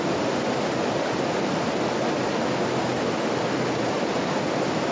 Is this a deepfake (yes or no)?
no